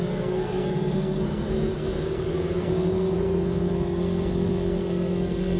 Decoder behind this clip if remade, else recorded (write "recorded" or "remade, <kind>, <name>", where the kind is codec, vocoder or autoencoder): remade, codec, SNAC